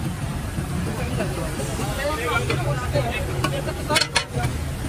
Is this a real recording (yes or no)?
yes